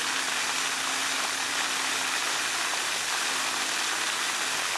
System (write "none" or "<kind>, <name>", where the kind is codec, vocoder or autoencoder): none